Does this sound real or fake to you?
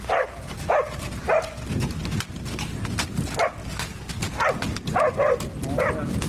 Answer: real